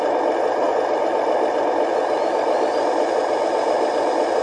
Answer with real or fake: real